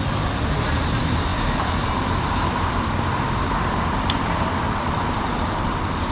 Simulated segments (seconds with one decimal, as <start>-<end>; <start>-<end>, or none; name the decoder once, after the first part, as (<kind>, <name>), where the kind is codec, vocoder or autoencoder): none